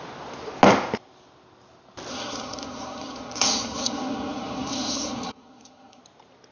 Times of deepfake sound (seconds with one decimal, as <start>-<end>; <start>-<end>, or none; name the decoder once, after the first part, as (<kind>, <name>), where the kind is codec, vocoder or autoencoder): 2.1-6.0 (codec, SNAC)